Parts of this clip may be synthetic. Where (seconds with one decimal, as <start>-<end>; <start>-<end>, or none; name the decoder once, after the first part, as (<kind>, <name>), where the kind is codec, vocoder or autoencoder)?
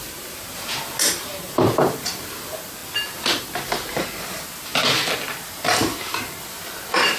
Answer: none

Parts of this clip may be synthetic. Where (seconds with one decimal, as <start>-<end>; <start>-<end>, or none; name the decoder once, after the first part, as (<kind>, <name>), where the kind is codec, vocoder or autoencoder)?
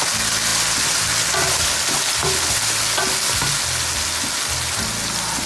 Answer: none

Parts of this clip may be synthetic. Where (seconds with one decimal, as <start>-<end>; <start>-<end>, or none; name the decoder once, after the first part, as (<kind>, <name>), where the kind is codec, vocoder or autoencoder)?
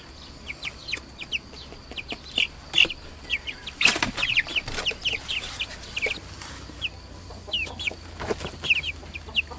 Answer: none